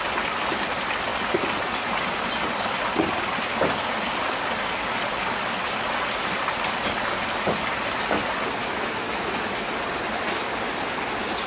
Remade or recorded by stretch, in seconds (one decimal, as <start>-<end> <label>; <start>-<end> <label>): 0.0-8.6 recorded; 8.6-9.7 remade; 9.7-11.5 recorded